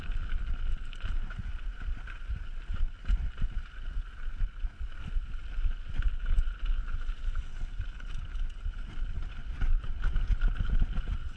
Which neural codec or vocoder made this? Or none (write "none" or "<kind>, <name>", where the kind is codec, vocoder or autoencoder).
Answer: none